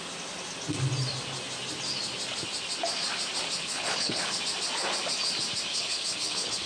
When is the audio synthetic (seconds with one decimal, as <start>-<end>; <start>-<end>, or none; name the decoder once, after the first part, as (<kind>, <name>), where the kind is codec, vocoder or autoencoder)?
3.6-4.4 (codec, HILCodec); 5.7-6.7